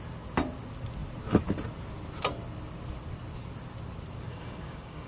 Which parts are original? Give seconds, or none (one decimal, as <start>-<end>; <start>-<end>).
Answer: 0.0-4.3